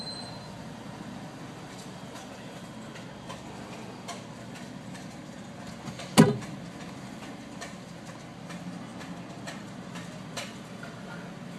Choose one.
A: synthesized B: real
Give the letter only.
B